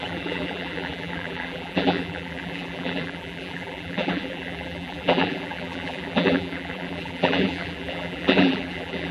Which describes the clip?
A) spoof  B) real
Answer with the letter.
A